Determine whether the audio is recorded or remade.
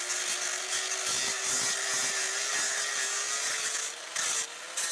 recorded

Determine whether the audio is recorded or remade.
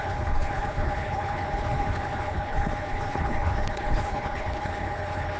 remade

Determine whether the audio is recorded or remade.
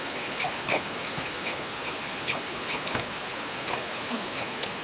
remade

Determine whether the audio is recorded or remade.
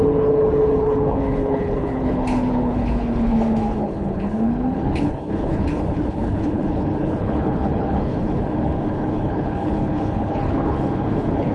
remade